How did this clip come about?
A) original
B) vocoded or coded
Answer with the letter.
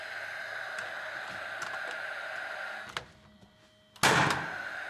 A